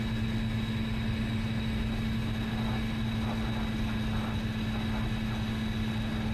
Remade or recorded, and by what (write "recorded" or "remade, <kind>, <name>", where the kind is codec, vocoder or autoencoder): recorded